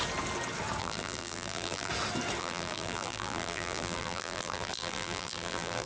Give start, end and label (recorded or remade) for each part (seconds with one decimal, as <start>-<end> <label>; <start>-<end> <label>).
0.0-0.8 recorded; 0.8-1.9 remade; 1.9-2.4 recorded; 2.4-5.9 remade